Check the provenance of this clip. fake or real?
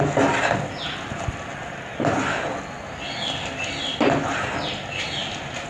real